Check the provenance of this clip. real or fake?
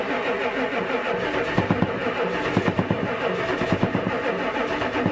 real